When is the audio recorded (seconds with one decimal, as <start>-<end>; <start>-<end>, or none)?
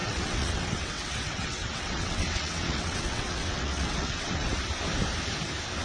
4.5-5.8